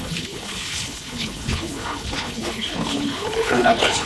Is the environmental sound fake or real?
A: fake